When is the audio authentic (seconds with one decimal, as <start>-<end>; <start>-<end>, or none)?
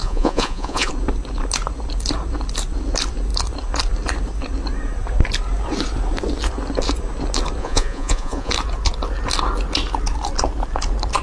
0.9-7.6; 8.5-11.2